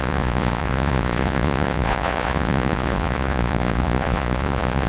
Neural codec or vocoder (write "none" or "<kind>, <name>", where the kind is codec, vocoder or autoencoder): vocoder, Vocos